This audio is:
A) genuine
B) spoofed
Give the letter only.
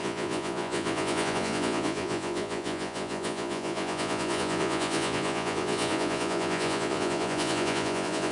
B